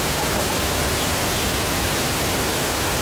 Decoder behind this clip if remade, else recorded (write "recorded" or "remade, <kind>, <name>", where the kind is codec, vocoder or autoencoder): recorded